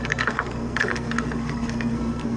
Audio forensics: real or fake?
fake